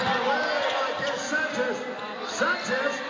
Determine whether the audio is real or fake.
real